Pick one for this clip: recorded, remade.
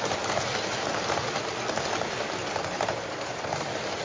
recorded